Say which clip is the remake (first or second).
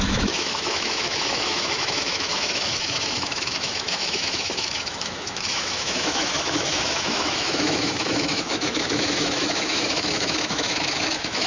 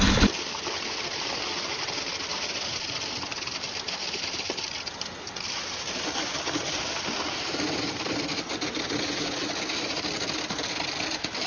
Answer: first